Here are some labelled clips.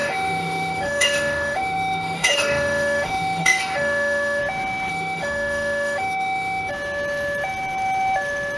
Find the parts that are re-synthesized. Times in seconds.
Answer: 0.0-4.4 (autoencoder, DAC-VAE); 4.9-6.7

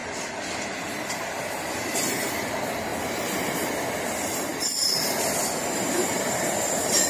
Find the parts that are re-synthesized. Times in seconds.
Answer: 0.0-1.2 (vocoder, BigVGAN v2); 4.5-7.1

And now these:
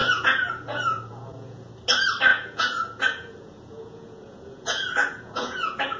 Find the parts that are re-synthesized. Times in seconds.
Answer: 0.0-1.7 (vocoder, Vocos); 2.3-6.0